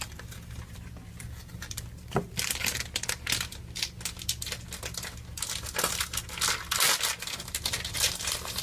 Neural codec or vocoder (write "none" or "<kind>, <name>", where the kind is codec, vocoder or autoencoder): none